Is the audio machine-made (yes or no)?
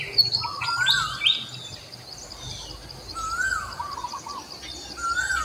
no